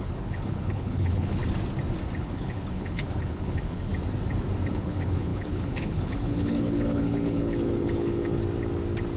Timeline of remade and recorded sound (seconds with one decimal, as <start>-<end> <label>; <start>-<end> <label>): 0.0-1.4 remade; 1.4-2.2 recorded; 2.2-3.9 remade; 3.9-4.7 recorded; 4.7-8.4 remade; 8.4-9.2 recorded